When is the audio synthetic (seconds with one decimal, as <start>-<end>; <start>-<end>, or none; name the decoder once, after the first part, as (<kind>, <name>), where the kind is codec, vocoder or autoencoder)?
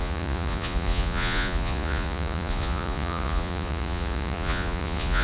0.0-5.2 (vocoder, Vocos)